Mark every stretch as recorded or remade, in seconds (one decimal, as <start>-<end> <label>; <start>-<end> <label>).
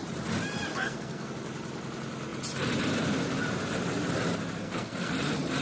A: 0.0-0.7 recorded; 0.7-1.3 remade; 1.3-4.6 recorded; 4.6-5.1 remade; 5.1-5.6 recorded